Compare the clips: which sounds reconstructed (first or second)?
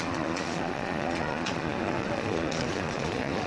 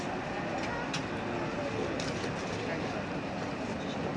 first